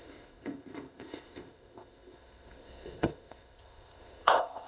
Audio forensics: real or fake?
fake